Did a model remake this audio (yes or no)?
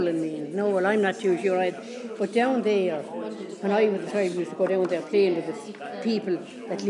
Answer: no